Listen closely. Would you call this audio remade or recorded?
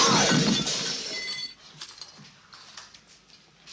recorded